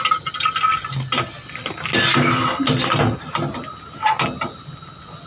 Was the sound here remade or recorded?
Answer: recorded